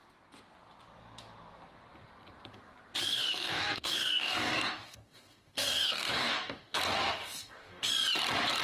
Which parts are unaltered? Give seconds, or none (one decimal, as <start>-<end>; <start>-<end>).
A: 0.0-3.1; 6.8-7.2; 7.9-8.6